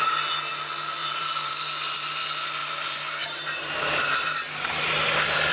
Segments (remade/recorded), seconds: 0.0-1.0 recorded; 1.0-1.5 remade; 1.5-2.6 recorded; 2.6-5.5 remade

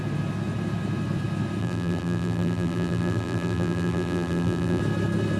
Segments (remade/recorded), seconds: 0.0-1.6 recorded; 1.6-4.8 remade; 4.8-5.4 recorded